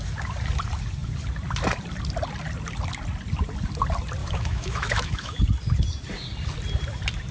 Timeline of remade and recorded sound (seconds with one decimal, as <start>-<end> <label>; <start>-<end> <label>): 0.0-4.2 recorded; 4.2-5.4 remade; 5.4-7.3 recorded